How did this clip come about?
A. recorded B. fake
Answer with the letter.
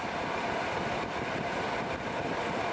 A